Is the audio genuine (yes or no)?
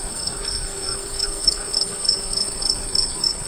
no